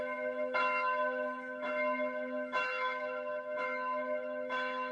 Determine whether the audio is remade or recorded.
remade